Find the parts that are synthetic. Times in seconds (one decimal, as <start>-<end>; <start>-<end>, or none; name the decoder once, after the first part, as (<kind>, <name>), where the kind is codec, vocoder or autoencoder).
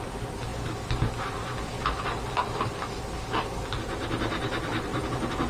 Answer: none